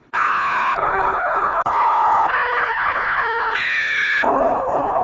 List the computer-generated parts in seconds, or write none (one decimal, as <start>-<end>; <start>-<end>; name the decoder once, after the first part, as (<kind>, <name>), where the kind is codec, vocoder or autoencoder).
0.0-5.0 (codec, HILCodec)